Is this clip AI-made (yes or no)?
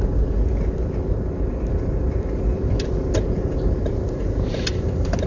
no